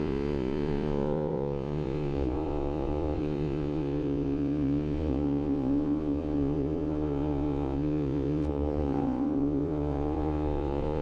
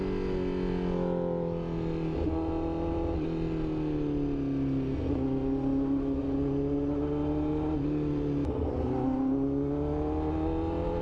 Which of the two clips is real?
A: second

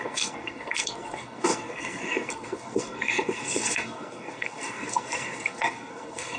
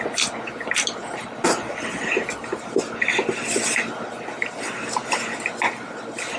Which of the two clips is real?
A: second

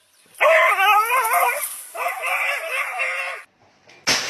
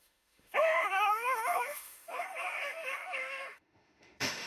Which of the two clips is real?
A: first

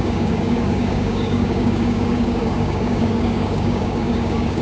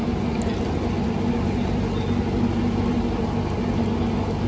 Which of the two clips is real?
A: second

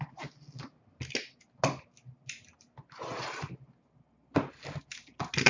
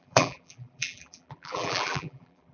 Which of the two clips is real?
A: first